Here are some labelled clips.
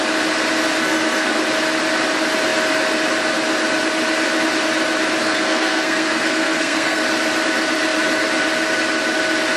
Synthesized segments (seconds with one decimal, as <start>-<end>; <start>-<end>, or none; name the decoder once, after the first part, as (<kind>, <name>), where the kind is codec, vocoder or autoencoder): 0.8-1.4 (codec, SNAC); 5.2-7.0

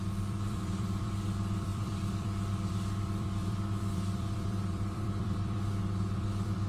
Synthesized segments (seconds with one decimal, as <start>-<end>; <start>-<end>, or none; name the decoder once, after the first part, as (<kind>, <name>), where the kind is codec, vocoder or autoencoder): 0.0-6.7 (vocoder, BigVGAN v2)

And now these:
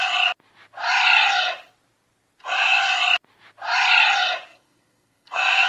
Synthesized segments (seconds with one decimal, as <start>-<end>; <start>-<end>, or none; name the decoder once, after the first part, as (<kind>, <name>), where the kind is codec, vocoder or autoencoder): 4.5-5.7 (codec, SNAC)

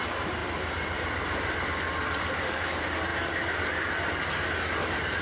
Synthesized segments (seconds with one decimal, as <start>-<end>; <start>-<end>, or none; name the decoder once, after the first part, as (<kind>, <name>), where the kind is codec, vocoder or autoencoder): 0.0-3.1 (vocoder, BigVGAN v2); 4.8-5.2

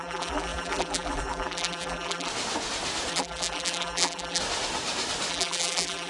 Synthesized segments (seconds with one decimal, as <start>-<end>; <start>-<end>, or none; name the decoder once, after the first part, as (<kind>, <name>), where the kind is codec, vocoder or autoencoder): 0.0-2.3 (vocoder, BigVGAN v2); 3.1-4.4; 5.3-6.1

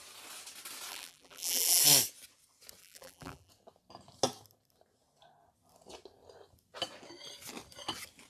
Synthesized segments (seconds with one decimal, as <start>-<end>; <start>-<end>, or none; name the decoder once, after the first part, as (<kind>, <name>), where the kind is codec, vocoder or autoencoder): 0.9-1.8 (vocoder, BigVGAN v2); 2.8-3.5

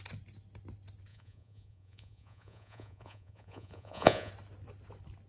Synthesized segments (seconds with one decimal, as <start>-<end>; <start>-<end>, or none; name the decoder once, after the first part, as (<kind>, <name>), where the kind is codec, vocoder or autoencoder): 1.1-4.3 (vocoder, Vocos)

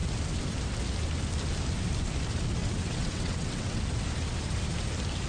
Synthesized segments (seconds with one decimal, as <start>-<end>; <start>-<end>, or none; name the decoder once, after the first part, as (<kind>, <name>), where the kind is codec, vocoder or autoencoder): 2.6-3.8 (vocoder, WaveNeXt)